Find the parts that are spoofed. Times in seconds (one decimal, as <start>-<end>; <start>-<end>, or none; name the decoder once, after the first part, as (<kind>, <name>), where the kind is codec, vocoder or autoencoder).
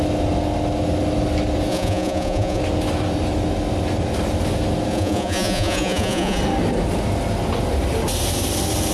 1.7-2.6 (vocoder, Vocos); 4.9-6.4